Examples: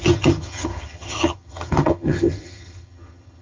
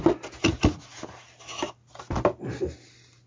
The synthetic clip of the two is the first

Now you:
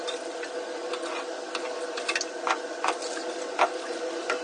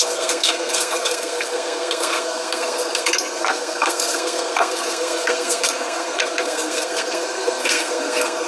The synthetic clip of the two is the second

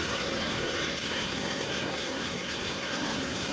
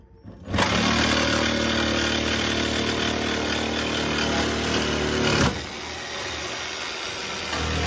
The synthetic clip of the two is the first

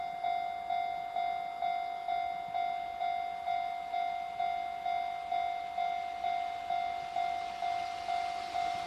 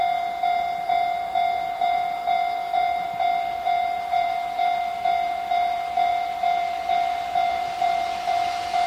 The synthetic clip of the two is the second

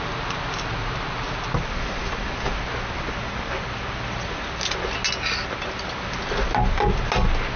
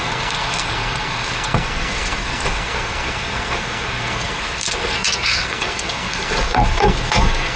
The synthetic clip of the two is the second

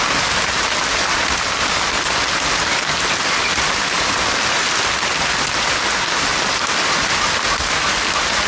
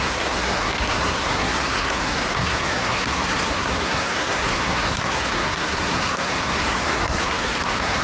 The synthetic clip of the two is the second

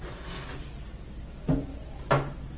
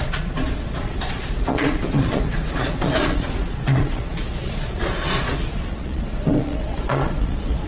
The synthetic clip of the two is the second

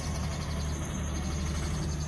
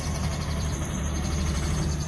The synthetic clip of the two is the second